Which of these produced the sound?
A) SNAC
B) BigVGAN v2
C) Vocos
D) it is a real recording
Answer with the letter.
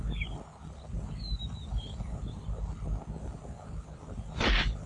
D